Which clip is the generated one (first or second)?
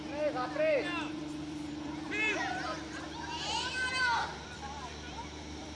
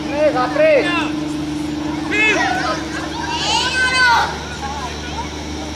first